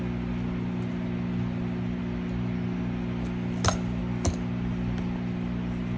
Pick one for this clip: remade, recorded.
recorded